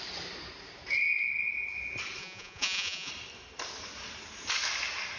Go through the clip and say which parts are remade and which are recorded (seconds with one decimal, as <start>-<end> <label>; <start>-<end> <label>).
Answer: 0.0-2.2 recorded; 2.2-3.1 remade; 3.1-5.2 recorded